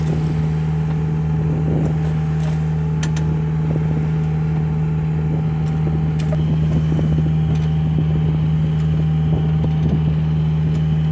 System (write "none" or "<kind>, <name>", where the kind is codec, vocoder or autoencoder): none